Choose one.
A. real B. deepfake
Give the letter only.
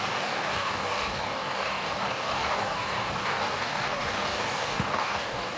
B